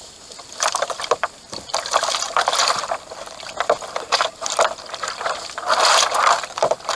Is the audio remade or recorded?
recorded